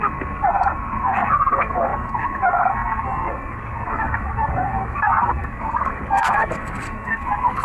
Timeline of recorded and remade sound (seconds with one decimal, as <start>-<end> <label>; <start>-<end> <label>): 0.0-7.6 remade